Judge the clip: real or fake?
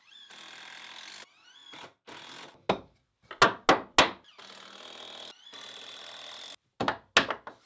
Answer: real